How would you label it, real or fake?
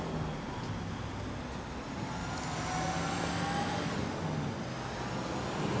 real